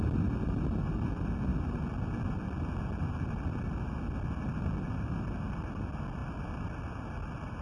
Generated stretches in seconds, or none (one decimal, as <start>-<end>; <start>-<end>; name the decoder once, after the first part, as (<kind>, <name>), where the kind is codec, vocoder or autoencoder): none